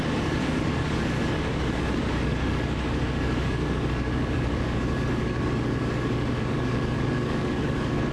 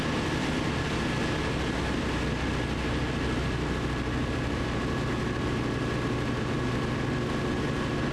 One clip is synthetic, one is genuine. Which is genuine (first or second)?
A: second